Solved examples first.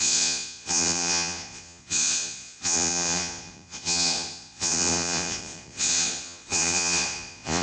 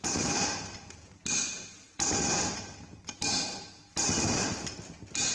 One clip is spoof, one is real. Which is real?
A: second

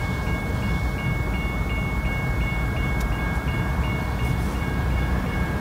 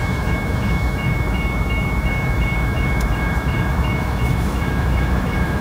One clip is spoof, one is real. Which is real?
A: first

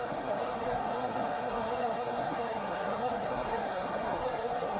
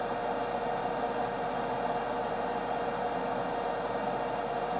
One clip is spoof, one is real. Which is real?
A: second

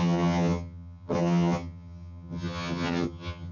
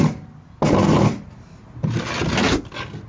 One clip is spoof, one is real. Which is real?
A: second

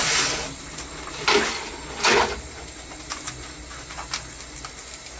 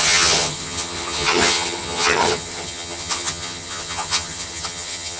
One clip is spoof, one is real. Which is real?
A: first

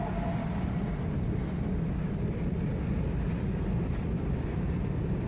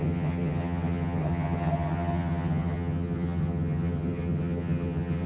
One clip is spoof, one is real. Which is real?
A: first